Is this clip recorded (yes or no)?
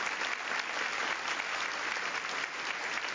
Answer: yes